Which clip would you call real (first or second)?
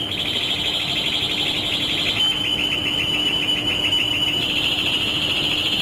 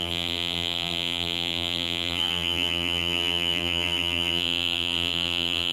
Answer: first